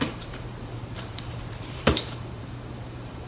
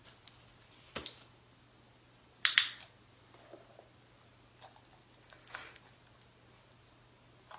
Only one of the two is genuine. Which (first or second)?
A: second